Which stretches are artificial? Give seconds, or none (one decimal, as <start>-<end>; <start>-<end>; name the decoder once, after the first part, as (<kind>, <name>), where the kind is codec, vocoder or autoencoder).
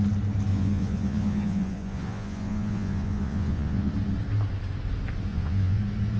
0.5-3.9 (vocoder, Vocos); 5.3-5.8